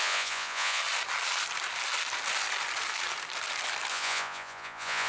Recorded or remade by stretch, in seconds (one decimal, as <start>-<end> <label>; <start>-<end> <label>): 0.0-0.8 remade; 0.8-3.9 recorded; 3.9-5.1 remade